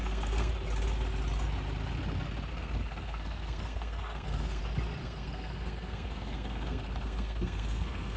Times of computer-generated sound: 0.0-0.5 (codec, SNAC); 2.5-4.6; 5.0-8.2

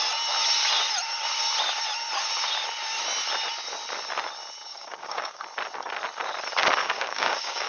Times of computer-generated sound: 4.7-5.4 (codec, DAC); 6.8-7.7

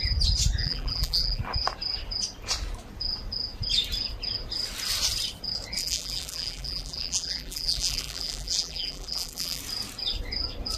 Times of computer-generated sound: 0.6-1.4 (vocoder, BigVGAN v2); 5.8-9.6